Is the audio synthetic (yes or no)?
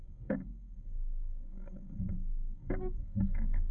yes